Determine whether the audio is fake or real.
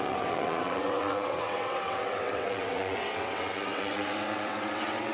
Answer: fake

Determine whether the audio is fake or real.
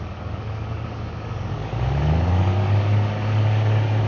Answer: fake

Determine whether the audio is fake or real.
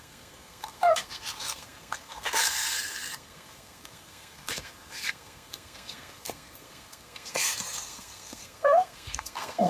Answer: fake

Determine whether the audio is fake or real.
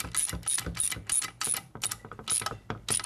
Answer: real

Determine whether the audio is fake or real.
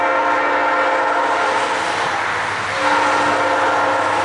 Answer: real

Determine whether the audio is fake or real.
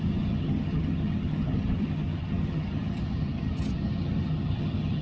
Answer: fake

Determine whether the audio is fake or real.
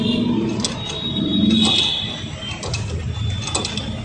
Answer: real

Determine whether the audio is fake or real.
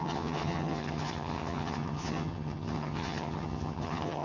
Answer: fake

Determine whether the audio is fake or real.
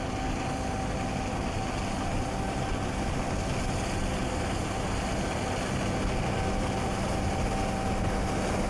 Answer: real